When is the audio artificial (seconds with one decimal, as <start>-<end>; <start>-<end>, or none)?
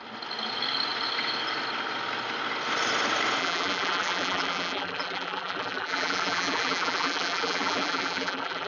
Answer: 3.4-8.7